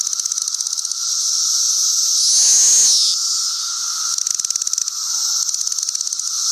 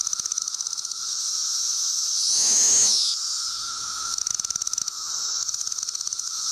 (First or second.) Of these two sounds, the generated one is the second